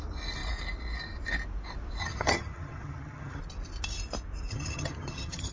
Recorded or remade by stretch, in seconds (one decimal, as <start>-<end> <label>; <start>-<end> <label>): 0.0-2.0 recorded; 2.0-3.4 remade; 3.4-4.5 recorded; 4.5-5.5 remade